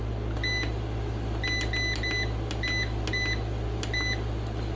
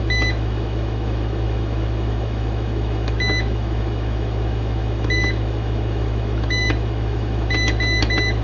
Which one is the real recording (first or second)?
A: first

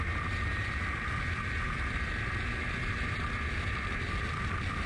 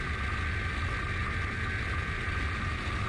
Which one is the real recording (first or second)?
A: second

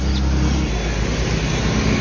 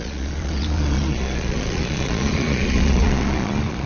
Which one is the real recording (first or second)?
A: first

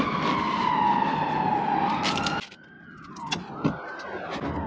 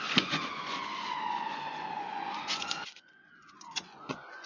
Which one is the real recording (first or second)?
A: first